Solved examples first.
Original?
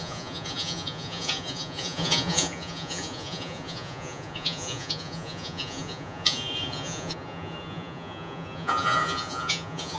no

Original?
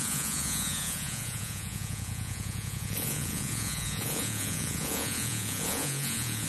no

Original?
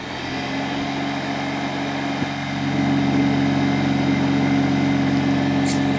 yes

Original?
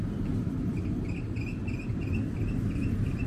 yes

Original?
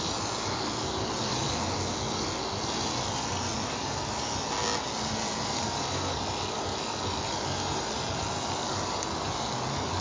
yes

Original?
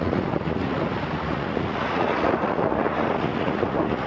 no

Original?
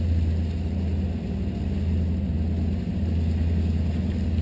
yes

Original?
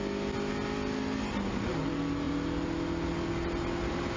yes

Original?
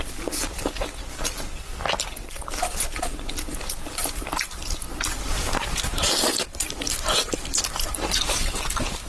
yes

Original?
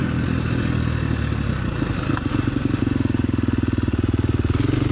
yes